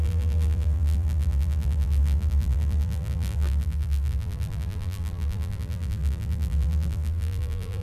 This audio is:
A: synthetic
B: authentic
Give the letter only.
A